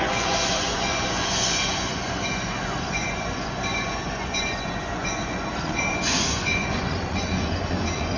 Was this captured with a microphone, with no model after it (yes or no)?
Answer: no